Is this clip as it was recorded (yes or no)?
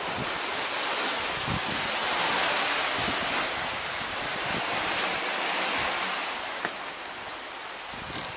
yes